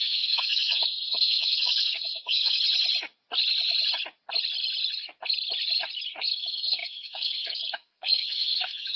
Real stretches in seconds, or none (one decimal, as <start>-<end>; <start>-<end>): 2.6-6.2